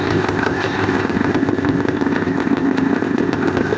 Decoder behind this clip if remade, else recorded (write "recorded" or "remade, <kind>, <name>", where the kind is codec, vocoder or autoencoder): remade, codec, ZipCodec